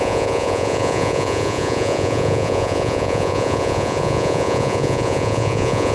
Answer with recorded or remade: remade